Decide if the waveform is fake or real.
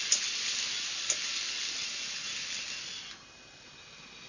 real